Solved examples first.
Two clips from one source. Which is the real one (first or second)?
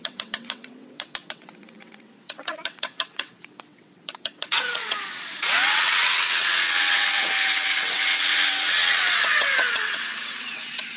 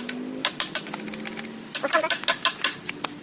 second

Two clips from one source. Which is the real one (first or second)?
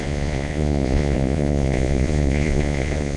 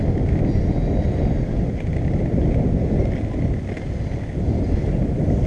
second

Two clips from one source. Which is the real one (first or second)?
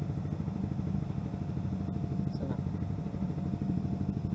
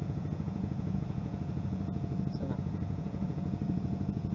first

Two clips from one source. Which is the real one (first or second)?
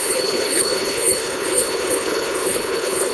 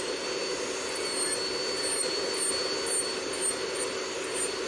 second